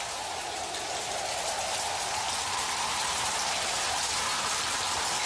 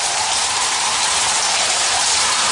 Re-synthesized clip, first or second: second